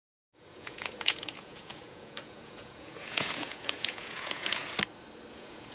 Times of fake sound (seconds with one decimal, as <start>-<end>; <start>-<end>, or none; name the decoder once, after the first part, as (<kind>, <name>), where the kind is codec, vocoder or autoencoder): 0.0-4.6 (vocoder, Vocos); 5.3-5.7